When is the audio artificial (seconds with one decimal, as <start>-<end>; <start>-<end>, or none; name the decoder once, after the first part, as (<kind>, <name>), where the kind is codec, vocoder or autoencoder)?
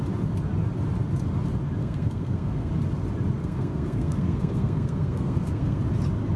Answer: 1.8-2.7 (codec, SNAC); 3.4-5.8